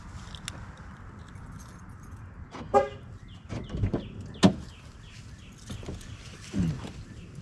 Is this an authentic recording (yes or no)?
yes